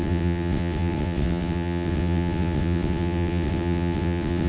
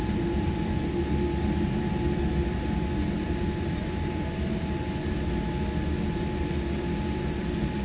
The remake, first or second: first